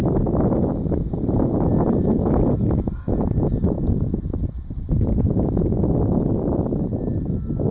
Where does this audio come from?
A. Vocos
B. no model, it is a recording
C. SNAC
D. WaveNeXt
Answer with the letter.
B